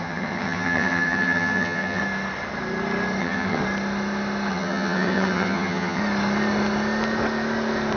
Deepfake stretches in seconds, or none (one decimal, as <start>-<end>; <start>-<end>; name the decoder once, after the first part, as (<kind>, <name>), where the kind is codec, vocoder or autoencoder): 0.0-2.0 (vocoder, HiFi-GAN); 3.2-3.6; 4.5-6.0